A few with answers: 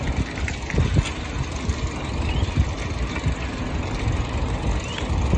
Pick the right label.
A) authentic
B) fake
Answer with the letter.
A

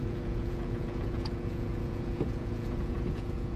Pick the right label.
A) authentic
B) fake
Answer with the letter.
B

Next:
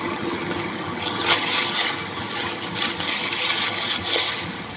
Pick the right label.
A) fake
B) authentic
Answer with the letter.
A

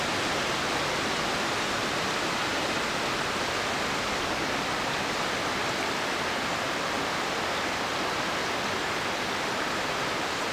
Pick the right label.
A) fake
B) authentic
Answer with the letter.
B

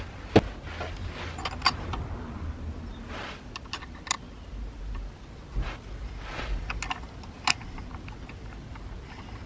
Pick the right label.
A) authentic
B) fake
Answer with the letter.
A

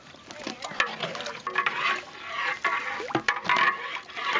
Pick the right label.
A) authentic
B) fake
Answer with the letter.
A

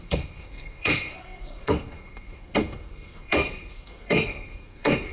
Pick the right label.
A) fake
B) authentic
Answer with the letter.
A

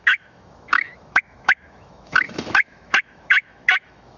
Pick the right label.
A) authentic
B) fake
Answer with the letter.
B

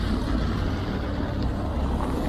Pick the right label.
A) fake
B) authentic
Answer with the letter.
B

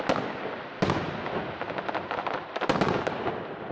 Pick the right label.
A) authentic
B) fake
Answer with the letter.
A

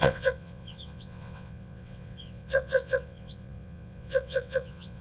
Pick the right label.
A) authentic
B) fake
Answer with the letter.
B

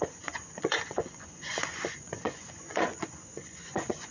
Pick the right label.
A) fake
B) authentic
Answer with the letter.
A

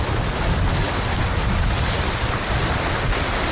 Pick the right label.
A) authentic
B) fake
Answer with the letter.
A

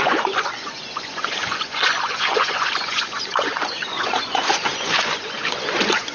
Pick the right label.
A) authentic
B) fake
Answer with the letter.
B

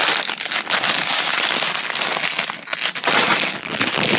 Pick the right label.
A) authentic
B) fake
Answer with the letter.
A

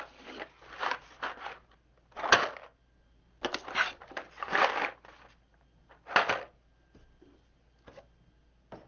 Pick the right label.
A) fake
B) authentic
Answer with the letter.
B